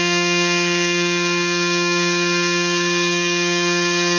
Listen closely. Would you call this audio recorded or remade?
remade